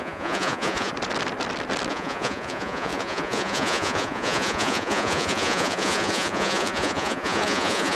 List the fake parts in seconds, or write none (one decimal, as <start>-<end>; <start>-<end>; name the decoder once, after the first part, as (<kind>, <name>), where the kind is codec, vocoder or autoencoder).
0.0-0.9 (vocoder, Vocos); 1.9-7.9